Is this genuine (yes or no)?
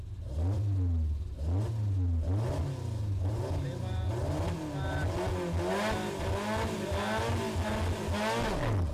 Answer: yes